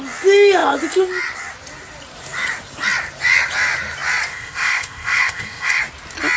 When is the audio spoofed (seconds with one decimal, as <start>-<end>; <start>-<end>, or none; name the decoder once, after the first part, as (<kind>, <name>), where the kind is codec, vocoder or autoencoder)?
4.3-5.8 (codec, ZipCodec)